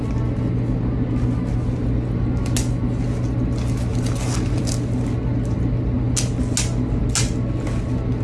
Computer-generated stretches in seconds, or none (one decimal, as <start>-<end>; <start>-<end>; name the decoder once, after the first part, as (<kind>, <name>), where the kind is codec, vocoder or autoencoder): none